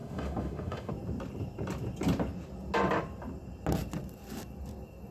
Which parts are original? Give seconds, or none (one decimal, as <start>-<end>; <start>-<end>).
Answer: 0.9-5.1